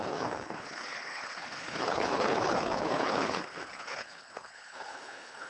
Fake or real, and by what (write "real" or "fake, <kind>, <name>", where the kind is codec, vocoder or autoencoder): fake, codec, HILCodec